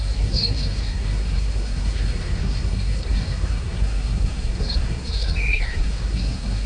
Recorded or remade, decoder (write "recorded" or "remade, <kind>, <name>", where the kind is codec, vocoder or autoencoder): remade, codec, SNAC